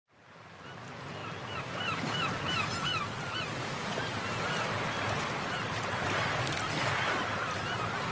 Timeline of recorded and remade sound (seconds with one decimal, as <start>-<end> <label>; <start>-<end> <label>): 0.0-8.1 recorded